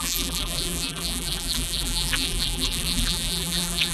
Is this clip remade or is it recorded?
remade